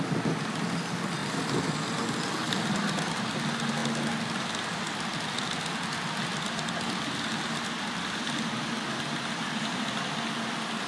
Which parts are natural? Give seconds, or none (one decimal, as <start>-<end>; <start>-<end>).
0.0-10.9